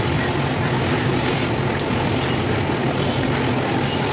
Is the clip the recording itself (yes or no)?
yes